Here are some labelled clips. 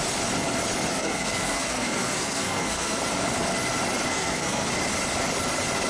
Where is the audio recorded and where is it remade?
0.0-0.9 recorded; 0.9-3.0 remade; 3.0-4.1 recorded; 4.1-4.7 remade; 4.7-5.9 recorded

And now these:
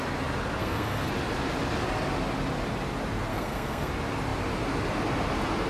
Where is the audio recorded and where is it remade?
0.0-0.6 recorded; 0.6-1.1 remade; 1.1-3.3 recorded; 3.3-3.9 remade; 3.9-5.7 recorded

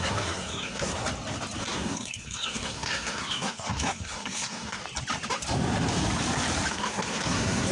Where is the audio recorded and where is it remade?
0.0-1.0 remade; 1.0-1.6 recorded; 1.6-4.8 remade; 4.8-6.7 recorded; 6.7-7.7 remade

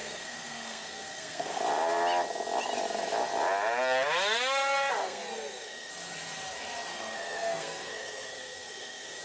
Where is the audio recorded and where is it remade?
0.0-1.6 remade; 1.6-5.0 recorded; 5.0-5.9 remade; 5.9-6.9 recorded; 6.9-9.2 remade

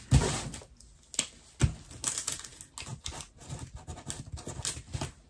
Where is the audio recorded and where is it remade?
0.0-5.3 recorded

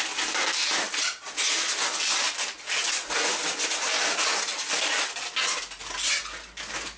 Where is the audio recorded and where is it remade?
0.0-7.0 recorded

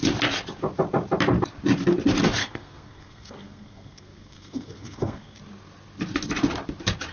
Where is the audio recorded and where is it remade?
0.0-2.4 recorded; 2.4-5.4 remade; 5.4-7.1 recorded

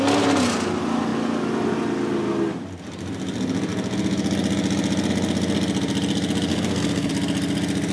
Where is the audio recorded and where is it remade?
0.0-6.5 recorded; 6.5-7.1 remade; 7.1-7.9 recorded